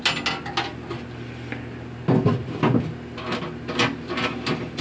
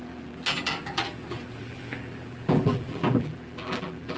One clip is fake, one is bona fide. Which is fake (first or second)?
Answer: second